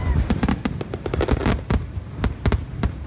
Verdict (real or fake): real